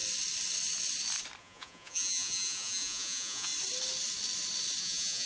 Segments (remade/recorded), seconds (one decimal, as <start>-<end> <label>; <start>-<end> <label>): 0.0-1.4 recorded; 1.4-3.5 remade; 3.5-4.8 recorded; 4.8-5.3 remade